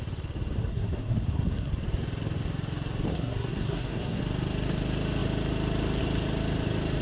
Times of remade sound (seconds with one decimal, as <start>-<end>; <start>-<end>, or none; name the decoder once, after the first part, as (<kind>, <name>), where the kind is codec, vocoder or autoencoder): 0.7-1.7 (codec, SNAC); 3.1-4.2

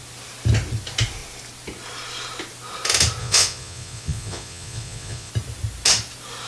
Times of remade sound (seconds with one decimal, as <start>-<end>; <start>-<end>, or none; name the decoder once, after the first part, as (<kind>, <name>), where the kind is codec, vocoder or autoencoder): 3.2-5.3 (vocoder, Vocos)

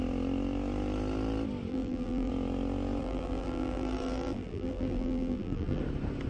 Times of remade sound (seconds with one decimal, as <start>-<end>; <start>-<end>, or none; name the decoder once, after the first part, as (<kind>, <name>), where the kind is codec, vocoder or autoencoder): 1.7-2.3 (vocoder, BigVGAN v2); 3.0-5.8

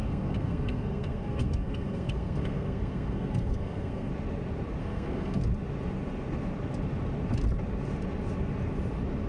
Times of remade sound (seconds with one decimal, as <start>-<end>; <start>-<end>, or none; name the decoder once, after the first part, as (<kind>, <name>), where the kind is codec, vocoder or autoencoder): 0.0-4.1 (codec, SNAC); 4.8-5.4